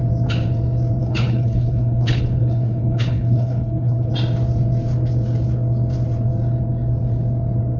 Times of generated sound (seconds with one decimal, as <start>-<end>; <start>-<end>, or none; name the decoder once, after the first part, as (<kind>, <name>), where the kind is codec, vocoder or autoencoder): 1.0-4.1 (codec, HILCodec)